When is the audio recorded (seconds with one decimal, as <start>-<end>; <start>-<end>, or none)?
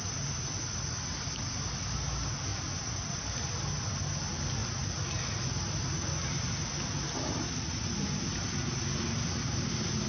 0.0-2.5; 3.3-10.1